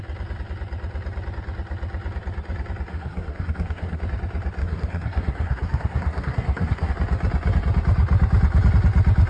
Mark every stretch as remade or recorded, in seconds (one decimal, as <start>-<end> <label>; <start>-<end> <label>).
0.0-2.9 recorded; 2.9-4.0 remade; 4.0-4.6 recorded; 4.6-6.9 remade; 6.9-9.3 recorded